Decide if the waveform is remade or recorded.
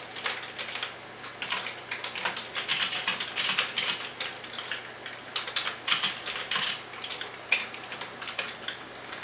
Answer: recorded